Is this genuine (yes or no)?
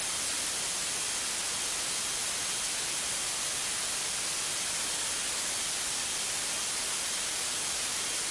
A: yes